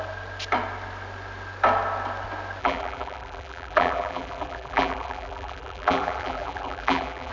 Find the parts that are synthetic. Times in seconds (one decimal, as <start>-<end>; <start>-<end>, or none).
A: 2.6-7.3